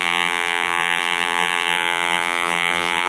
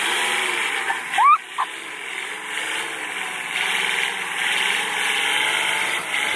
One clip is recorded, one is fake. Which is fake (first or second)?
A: first